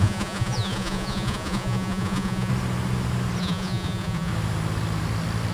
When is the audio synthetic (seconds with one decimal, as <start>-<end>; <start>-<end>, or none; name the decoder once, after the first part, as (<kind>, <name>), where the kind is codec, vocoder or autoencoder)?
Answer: 0.0-2.5 (vocoder, Vocos); 3.4-4.3